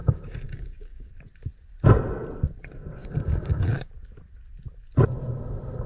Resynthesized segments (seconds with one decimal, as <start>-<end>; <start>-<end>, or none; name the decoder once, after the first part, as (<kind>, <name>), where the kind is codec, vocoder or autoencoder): 0.0-1.1 (codec, DAC); 3.0-3.9